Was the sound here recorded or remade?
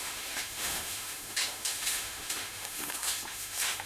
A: remade